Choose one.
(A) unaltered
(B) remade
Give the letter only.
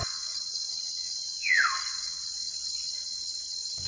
B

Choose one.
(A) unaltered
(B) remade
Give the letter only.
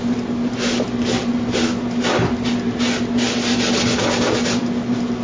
A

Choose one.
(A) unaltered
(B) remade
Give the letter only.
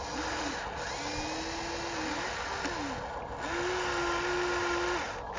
A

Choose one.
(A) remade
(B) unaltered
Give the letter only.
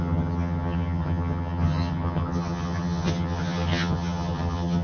A